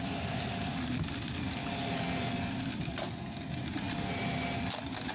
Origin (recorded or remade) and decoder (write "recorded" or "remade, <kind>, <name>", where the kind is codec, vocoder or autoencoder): recorded